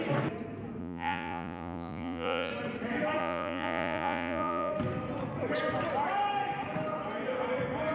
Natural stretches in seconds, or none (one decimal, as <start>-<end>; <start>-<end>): 0.0-0.8; 2.5-3.2; 4.7-7.9

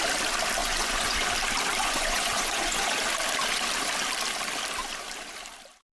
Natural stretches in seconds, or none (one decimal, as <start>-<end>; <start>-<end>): 0.0-0.6; 1.3-1.8; 3.0-5.9

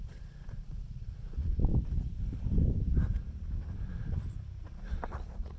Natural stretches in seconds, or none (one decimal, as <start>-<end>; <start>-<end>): 1.7-4.6

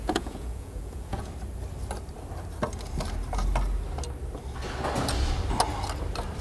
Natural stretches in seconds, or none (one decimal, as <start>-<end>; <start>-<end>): 1.3-6.4

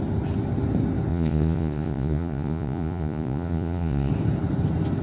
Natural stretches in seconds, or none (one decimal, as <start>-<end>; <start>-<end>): 0.0-1.1; 4.1-5.0

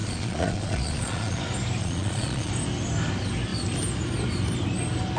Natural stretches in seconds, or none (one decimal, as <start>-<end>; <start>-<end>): 1.4-1.8; 2.5-5.2

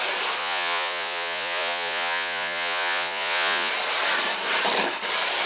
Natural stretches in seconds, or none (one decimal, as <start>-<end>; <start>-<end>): 0.0-0.4; 3.7-5.5